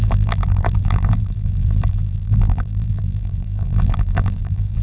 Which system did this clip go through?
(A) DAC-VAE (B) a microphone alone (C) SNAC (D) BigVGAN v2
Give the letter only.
D